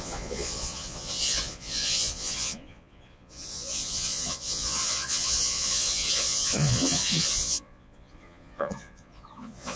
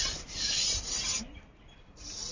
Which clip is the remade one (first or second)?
first